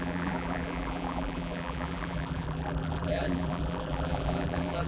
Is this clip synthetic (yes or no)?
yes